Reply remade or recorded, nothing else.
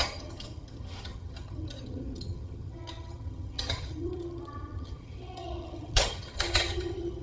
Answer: remade